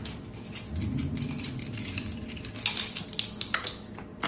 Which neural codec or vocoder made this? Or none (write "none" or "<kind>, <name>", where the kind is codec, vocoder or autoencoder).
none